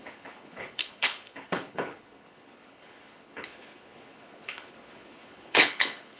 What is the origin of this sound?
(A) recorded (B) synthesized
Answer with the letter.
B